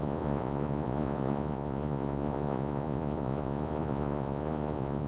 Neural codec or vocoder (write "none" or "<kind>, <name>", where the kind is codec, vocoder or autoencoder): vocoder, Vocos